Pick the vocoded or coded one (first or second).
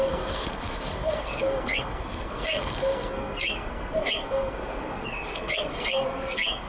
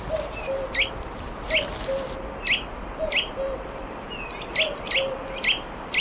first